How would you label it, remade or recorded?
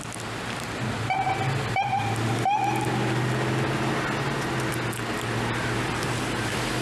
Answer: recorded